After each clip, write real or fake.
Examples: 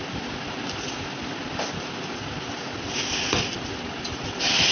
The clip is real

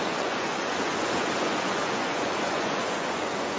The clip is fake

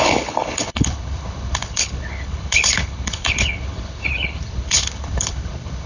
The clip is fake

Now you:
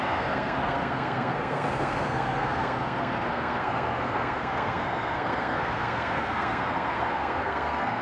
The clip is fake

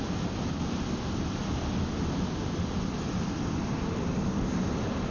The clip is real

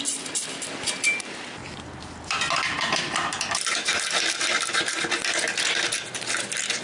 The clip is fake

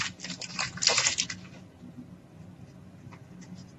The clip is real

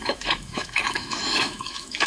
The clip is fake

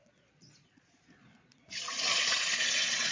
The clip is fake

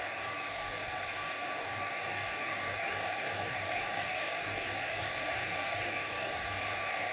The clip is fake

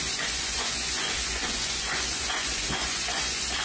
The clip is fake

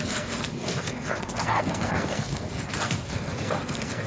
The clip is fake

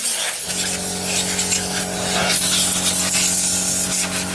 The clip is real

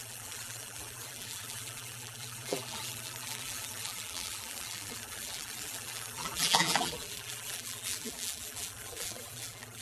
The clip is fake